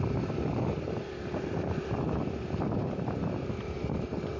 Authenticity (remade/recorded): recorded